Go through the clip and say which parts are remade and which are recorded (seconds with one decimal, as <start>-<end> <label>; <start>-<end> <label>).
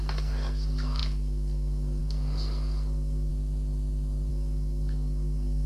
0.0-3.3 remade; 3.3-4.3 recorded; 4.3-5.7 remade